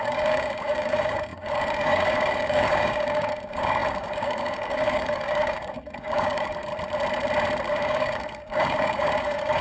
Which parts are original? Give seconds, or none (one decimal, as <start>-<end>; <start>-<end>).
6.7-7.7